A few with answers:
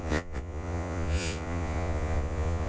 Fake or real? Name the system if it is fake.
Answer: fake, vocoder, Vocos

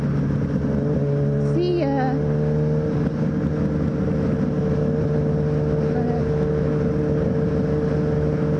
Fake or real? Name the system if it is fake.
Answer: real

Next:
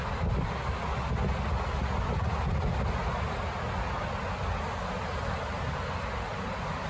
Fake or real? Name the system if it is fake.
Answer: real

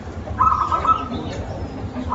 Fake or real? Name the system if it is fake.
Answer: fake, vocoder, BigVGAN v2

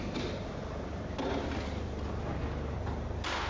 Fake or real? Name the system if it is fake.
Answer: real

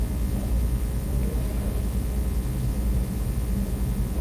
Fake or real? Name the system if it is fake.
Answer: real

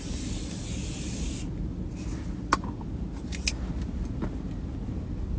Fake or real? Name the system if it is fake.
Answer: real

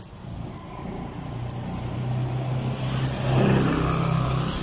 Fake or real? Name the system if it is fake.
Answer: real